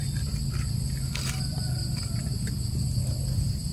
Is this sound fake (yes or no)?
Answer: no